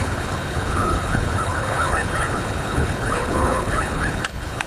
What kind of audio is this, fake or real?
fake